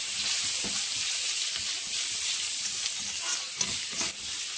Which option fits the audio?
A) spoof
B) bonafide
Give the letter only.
B